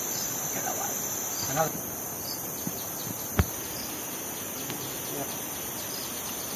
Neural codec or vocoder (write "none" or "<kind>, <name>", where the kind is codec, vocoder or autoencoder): none